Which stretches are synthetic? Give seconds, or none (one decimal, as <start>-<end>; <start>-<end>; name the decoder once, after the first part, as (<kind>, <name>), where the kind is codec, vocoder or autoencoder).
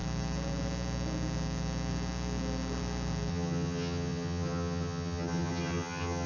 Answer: 3.3-6.3 (vocoder, HiFi-GAN)